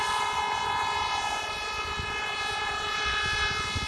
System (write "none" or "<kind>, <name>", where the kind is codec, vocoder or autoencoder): vocoder, Vocos